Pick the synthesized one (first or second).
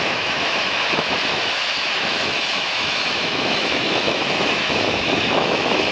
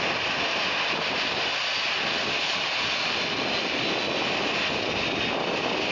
first